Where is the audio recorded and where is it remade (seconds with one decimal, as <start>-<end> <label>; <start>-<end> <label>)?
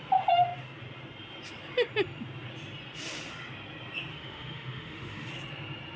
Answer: 0.0-4.1 recorded; 4.1-5.3 remade; 5.3-6.0 recorded